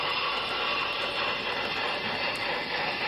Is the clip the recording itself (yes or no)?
no